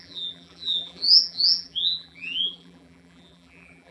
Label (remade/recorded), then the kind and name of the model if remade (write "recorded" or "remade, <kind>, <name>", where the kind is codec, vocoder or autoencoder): remade, vocoder, BigVGAN v2